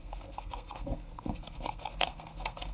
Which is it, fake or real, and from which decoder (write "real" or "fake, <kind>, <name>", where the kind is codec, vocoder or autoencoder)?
fake, codec, SNAC